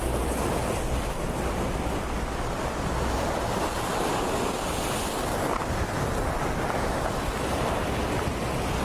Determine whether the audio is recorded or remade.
recorded